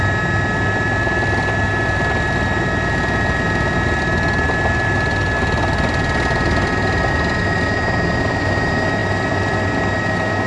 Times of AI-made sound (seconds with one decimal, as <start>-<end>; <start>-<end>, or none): none